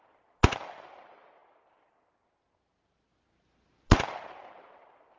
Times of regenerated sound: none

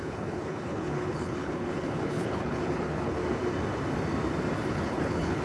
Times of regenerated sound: 0.0-3.2 (codec, HILCodec); 4.7-5.4

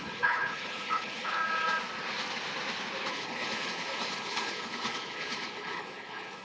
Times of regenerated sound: 0.0-1.4 (codec, HILCodec); 3.1-6.4

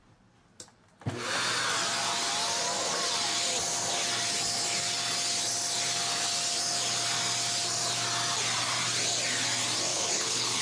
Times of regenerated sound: 9.9-10.6 (codec, HILCodec)

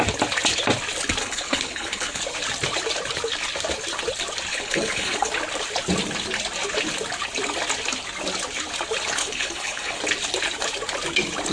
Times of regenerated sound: 1.2-2.2 (codec, HILCodec); 4.5-5.3; 9.2-10.0

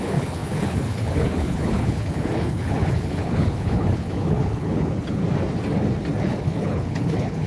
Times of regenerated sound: 0.0-5.2 (codec, HILCodec); 6.2-7.5